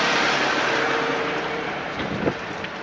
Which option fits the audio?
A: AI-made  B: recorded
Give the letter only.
A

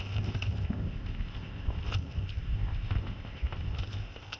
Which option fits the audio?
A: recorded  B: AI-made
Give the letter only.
B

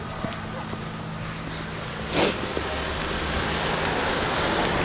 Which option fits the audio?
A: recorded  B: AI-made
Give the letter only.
A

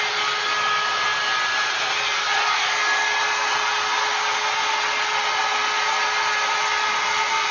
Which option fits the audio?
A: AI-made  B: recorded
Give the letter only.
B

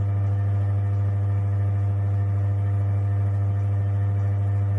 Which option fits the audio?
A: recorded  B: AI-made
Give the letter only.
A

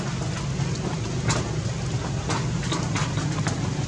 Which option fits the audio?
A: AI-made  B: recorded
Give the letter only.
B